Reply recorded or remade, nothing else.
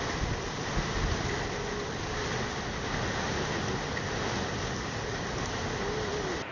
recorded